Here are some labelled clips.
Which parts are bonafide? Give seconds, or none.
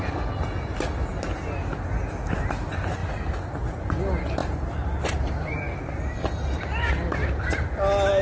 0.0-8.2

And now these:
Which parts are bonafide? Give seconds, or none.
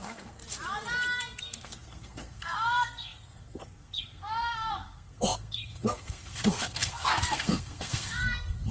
0.4-1.4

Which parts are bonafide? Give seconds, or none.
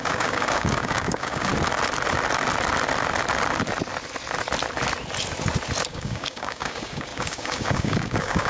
1.5-5.9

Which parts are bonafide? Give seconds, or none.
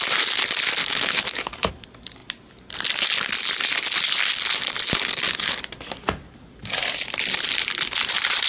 0.0-0.8; 1.7-8.5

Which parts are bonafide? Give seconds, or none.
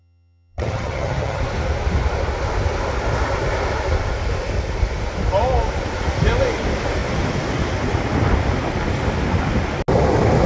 1.4-10.5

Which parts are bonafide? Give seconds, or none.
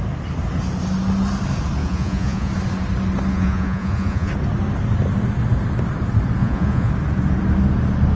0.0-1.8; 2.5-3.3; 4.3-6.4; 6.9-8.1